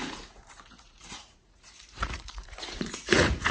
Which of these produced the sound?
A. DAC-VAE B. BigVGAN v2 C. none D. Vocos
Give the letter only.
D